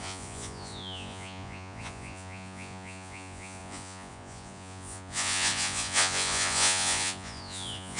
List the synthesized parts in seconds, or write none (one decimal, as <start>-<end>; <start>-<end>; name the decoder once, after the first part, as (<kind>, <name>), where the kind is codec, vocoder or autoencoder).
0.0-8.0 (vocoder, Vocos)